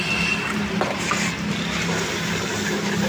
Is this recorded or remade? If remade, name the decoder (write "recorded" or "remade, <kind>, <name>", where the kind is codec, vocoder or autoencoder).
recorded